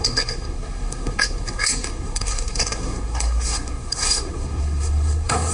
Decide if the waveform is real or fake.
fake